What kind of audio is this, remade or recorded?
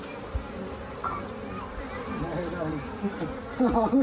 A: recorded